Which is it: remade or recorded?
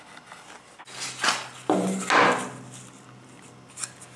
recorded